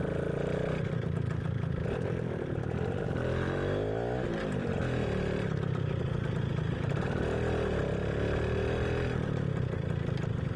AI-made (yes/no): no